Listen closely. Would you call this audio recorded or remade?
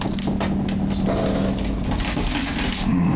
recorded